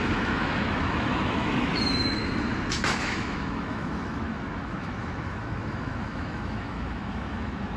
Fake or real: fake